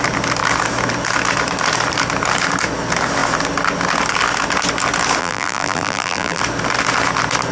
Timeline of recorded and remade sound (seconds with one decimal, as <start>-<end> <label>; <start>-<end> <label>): 0.0-5.2 recorded; 5.2-6.4 remade; 6.4-7.5 recorded